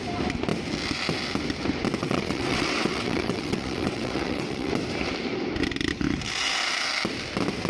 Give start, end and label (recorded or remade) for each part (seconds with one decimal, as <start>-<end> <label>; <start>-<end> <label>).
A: 0.0-2.0 recorded; 2.0-4.7 remade; 4.7-7.7 recorded